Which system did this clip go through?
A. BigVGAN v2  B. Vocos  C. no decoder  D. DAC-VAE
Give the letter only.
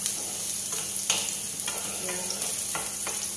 C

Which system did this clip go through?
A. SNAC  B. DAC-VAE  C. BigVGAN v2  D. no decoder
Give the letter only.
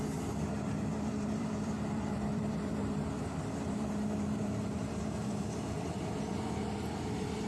C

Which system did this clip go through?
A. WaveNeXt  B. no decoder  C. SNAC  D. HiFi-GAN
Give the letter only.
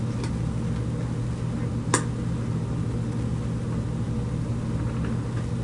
B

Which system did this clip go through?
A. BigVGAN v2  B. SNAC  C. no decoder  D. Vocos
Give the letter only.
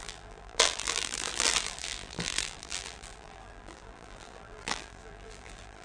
A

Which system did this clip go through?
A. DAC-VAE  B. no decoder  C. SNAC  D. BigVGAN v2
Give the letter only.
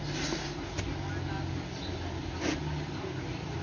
B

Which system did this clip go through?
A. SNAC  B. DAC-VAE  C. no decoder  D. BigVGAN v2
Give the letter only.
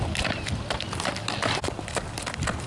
C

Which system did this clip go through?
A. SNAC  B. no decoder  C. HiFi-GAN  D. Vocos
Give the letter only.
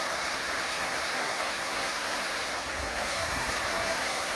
A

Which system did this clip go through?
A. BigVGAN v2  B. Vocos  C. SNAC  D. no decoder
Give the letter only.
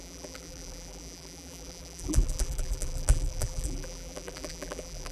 A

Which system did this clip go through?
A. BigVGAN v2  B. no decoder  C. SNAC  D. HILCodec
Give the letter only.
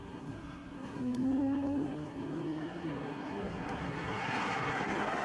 C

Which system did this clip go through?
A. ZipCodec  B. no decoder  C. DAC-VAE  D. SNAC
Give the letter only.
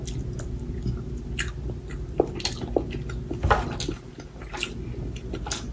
B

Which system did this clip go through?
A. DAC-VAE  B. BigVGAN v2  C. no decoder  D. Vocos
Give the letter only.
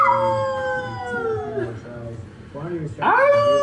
C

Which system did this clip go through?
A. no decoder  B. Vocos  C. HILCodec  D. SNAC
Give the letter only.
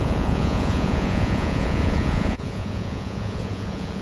B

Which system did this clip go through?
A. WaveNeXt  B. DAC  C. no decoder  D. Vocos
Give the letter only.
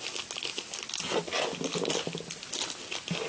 C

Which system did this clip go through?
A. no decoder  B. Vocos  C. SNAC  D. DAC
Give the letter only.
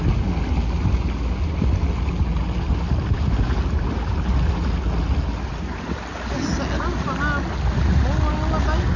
A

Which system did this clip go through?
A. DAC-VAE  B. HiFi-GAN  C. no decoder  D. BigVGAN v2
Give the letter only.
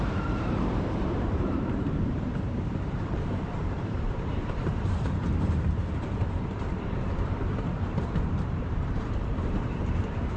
D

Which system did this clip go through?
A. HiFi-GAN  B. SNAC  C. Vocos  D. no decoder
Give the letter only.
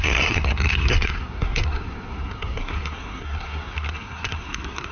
B